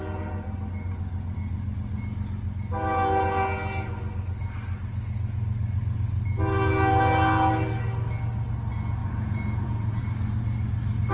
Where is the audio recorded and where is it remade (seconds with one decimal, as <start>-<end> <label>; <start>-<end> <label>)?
0.0-9.0 recorded; 9.0-10.0 remade; 10.0-11.1 recorded